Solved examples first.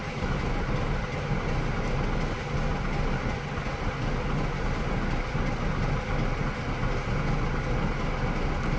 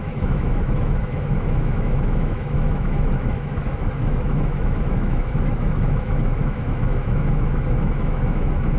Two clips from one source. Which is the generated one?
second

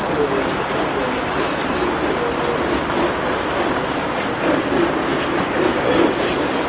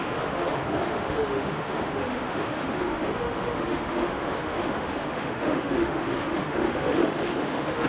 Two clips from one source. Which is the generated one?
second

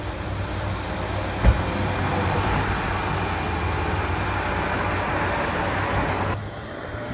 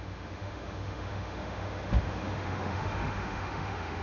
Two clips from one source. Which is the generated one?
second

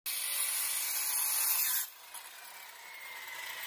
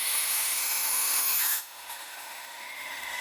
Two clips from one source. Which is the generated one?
second